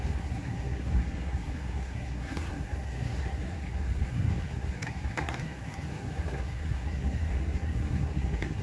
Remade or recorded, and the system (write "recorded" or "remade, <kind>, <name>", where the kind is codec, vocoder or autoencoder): remade, codec, SNAC